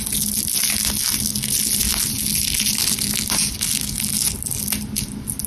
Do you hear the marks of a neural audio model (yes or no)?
no